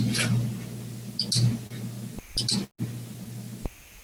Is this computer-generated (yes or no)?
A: no